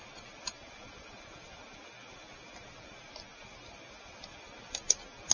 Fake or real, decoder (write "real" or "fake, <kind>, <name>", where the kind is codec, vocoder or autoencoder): real